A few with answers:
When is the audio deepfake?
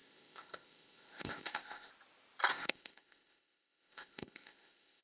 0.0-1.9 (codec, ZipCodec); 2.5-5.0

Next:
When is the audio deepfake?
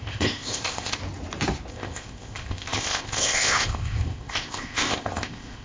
0.0-1.0 (codec, ZipCodec); 1.7-5.6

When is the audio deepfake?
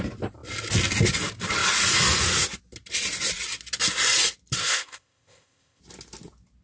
4.6-5.8 (codec, ZipCodec)